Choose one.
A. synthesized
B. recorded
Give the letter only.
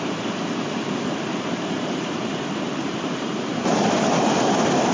B